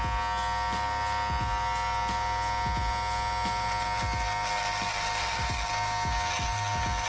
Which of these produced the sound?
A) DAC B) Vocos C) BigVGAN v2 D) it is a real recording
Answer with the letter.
D